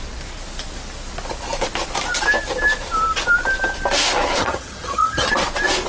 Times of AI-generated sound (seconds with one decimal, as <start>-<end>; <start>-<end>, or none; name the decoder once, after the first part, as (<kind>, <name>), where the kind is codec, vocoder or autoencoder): 4.4-5.3 (vocoder, HiFi-GAN)